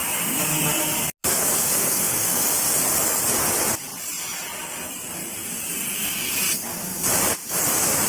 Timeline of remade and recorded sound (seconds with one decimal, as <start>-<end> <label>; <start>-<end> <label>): 0.0-1.2 recorded; 1.2-2.4 remade; 2.4-8.1 recorded